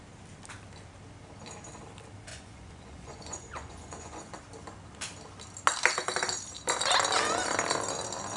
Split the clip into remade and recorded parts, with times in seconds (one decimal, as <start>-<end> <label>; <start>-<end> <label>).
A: 0.0-2.3 recorded; 2.3-4.3 remade; 4.3-8.4 recorded